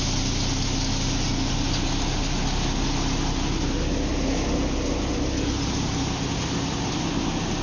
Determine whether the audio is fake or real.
real